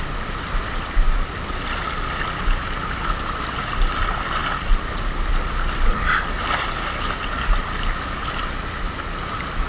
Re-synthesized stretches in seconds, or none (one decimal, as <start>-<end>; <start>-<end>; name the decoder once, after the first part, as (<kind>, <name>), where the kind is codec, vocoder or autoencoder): none

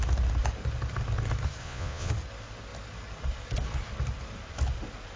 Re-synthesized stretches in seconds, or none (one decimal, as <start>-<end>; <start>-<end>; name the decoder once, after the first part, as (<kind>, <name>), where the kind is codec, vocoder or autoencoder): 1.6-2.1 (vocoder, Vocos)

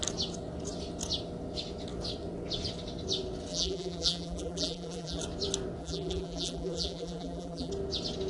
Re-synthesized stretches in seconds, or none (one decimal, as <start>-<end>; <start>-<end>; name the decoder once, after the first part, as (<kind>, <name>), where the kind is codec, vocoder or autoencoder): 3.5-5.2 (vocoder, BigVGAN v2); 5.8-7.7

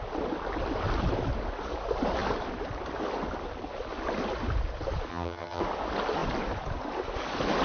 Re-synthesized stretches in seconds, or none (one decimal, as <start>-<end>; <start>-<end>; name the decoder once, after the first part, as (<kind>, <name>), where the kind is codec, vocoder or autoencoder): 5.1-5.6 (vocoder, HiFi-GAN)

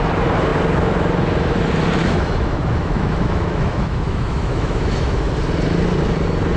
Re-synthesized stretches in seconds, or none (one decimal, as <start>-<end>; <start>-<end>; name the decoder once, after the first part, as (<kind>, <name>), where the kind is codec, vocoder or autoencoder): 2.0-5.3 (autoencoder, DAC-VAE)

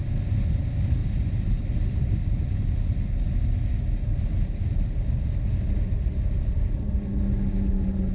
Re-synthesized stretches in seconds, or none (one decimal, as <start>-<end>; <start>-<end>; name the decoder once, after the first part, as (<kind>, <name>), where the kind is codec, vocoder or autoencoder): 1.0-1.6 (vocoder, BigVGAN v2)